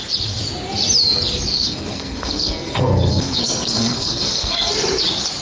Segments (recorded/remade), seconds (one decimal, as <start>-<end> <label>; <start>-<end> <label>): 0.0-1.5 recorded; 1.5-4.7 remade; 4.7-5.4 recorded